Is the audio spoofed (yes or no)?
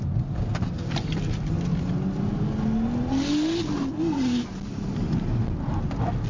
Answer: no